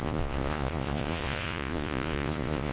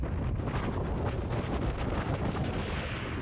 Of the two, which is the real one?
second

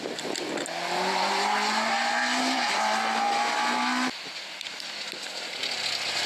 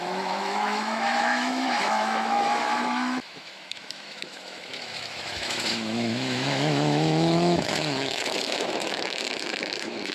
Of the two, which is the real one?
first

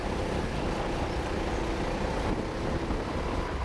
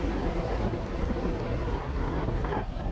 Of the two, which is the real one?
first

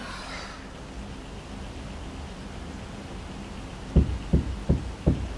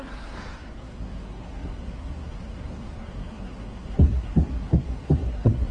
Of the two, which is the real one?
first